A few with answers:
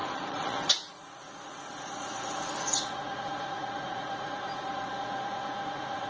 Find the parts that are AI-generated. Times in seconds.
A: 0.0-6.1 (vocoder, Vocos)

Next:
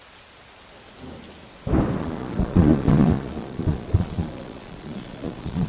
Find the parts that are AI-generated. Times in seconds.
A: 2.0-5.7 (vocoder, Vocos)

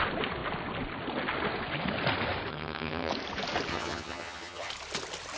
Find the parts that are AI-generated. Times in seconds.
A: 2.5-3.1 (vocoder, HiFi-GAN); 3.7-4.7

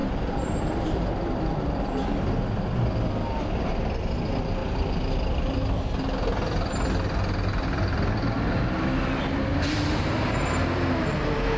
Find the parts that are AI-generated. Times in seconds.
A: 0.0-1.9 (vocoder, BigVGAN v2); 9.5-11.6

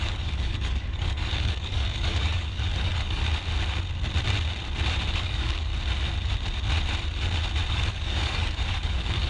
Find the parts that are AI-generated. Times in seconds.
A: 0.0-3.2 (codec, DAC); 5.1-5.7; 7.7-9.3

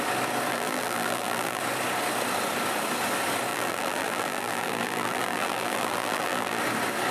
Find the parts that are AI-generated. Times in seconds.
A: 0.5-1.6 (vocoder, BigVGAN v2); 3.5-6.6

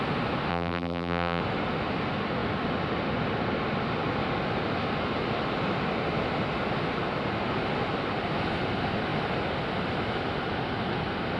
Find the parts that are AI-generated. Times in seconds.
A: 0.5-1.4 (vocoder, BigVGAN v2)